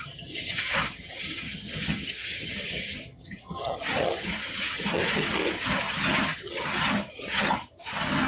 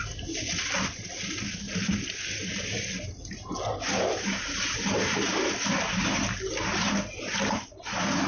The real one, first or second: second